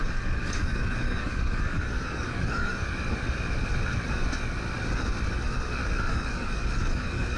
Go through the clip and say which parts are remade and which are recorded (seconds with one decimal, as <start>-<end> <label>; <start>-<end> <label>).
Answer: 0.0-2.7 remade; 2.7-6.1 recorded; 6.1-7.4 remade